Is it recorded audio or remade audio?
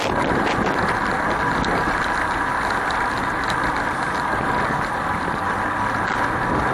recorded